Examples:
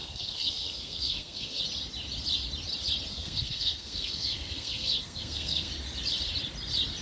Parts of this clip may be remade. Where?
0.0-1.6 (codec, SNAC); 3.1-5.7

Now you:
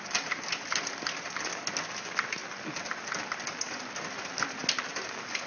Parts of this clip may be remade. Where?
none

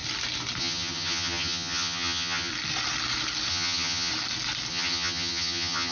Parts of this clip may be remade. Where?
0.6-2.5 (vocoder, HiFi-GAN); 3.5-4.1; 4.7-5.9

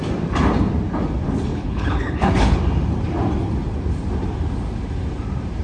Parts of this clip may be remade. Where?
1.5-2.6 (codec, HILCodec)

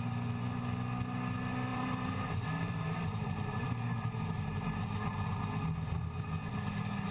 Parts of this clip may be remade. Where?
1.7-4.8 (vocoder, BigVGAN v2)

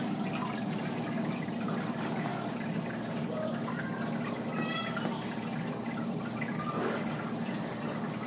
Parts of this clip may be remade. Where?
none

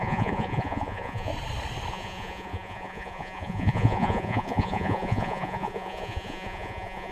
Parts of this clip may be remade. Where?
0.0-1.3 (vocoder, Vocos); 1.9-7.1